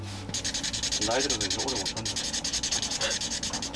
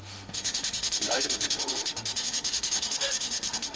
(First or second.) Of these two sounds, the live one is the first